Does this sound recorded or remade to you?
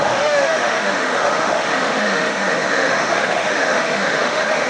remade